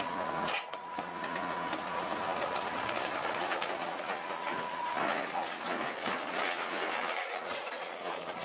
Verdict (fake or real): fake